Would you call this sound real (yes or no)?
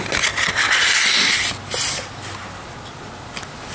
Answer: yes